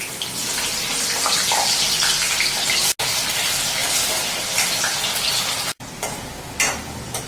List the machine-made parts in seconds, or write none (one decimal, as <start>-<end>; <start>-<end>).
3.8-5.0